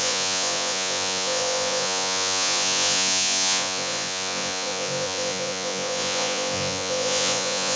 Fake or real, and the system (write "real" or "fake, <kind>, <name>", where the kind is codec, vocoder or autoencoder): fake, vocoder, Vocos